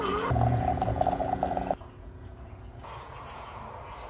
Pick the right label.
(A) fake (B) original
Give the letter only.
A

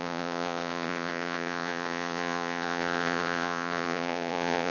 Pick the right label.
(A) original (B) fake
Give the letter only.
B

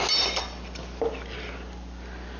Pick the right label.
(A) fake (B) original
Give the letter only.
B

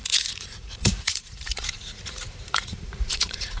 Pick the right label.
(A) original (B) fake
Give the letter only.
B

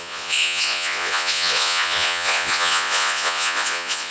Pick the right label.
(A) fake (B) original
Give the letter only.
A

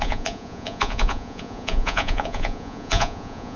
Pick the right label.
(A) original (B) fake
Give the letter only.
B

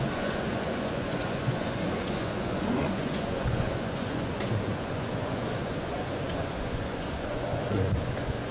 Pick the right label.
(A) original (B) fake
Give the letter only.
B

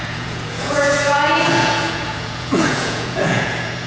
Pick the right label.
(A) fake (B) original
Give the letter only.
A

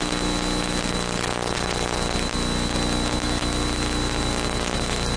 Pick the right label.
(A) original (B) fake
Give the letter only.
A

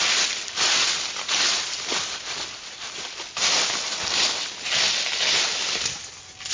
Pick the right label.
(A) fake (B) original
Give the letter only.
B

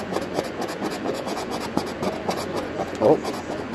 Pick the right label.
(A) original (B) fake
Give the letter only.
B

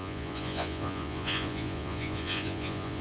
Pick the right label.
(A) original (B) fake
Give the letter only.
B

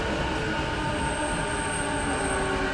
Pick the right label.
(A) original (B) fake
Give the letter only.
A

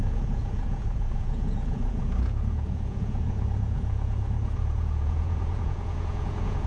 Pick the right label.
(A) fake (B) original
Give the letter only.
A